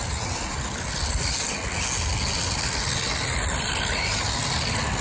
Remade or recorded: recorded